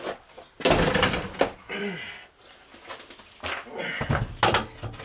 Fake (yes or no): no